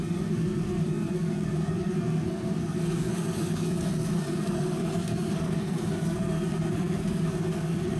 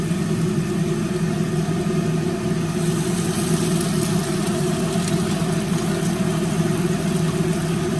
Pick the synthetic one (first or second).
first